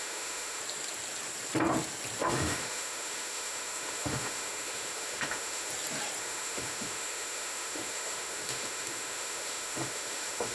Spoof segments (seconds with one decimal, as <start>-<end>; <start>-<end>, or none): 0.0-0.6; 2.2-5.7; 6.2-10.5